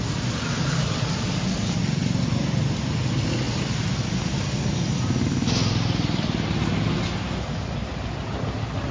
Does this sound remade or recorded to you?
recorded